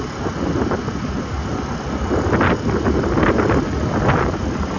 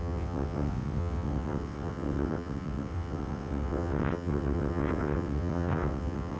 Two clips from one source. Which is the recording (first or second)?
first